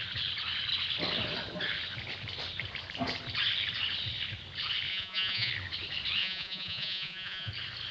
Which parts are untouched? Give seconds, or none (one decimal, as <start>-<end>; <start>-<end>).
0.0-4.9; 5.5-6.2; 7.5-7.9